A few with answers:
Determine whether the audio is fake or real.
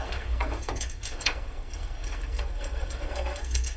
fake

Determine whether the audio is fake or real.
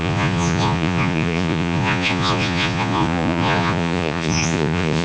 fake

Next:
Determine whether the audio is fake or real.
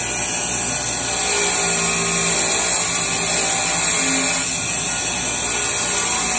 real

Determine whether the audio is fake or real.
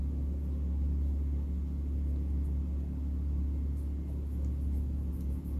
real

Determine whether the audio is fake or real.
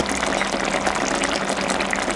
real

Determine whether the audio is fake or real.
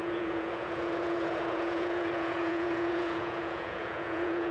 fake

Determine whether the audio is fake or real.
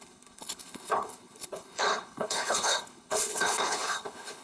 fake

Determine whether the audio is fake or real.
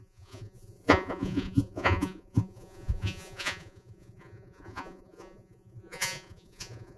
fake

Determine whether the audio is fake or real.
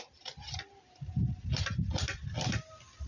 real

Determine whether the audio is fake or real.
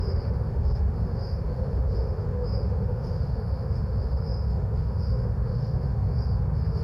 fake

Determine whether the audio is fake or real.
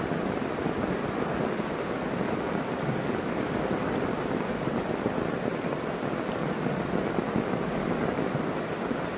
real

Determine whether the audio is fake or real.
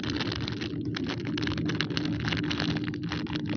real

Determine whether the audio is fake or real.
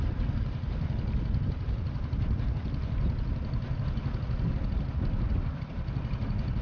real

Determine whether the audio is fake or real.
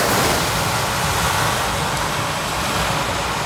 real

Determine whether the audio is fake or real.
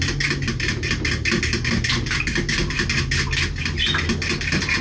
real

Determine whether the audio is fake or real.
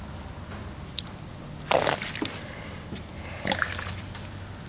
real